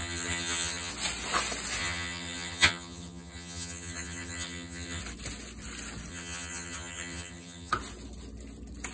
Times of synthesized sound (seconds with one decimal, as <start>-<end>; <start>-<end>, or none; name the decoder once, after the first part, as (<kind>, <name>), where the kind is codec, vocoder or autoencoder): 0.0-0.9 (vocoder, HiFi-GAN); 1.8-5.0; 6.1-7.7